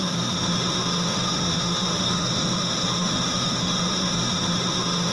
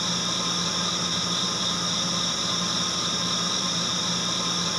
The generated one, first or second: first